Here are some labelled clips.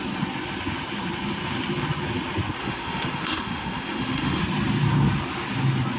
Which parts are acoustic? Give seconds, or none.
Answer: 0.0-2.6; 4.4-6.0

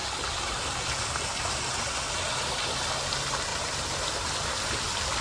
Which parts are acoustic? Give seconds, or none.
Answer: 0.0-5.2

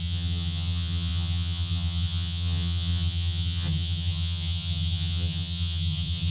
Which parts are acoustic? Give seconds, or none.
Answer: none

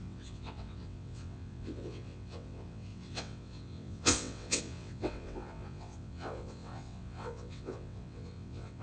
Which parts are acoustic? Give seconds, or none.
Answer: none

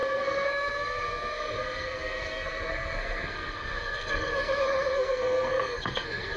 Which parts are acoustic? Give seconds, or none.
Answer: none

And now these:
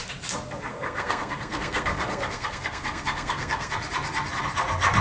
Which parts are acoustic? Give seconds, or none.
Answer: 0.0-0.7; 3.7-5.0

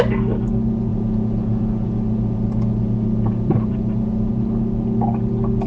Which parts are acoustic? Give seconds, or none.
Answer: 0.0-0.9; 4.3-5.7